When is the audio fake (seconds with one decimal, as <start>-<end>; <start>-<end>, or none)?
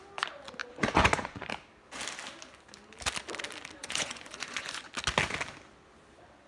0.6-1.5; 3.8-4.9